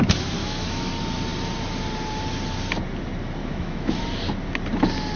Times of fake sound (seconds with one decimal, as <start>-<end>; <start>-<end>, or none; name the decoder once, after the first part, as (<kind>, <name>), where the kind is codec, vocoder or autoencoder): 0.4-0.9 (autoencoder, DAC-VAE); 3.4-4.0